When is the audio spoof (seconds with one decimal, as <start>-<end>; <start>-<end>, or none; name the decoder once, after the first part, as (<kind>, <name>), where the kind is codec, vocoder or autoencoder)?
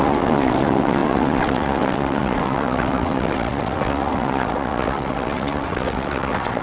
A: 0.0-6.6 (vocoder, WaveNeXt)